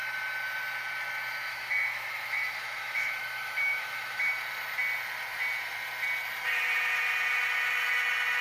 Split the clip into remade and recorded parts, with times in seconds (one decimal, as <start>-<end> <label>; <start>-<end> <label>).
0.0-1.5 recorded; 1.5-4.3 remade; 4.3-8.4 recorded